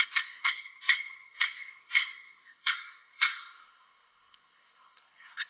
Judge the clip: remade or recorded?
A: remade